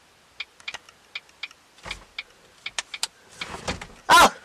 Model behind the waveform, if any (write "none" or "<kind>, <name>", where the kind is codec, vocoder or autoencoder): none